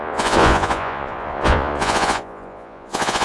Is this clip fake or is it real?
fake